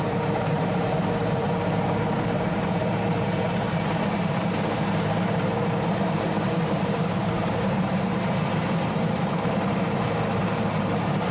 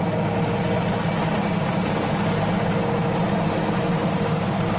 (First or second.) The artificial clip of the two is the first